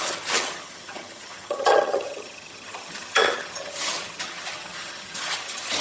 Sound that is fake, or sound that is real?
fake